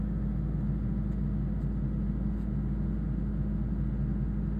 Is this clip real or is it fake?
real